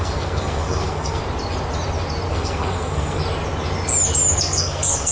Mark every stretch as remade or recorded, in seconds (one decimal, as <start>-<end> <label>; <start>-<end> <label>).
0.0-1.2 remade; 1.2-2.3 recorded; 2.3-3.2 remade; 3.2-4.4 recorded; 4.4-5.1 remade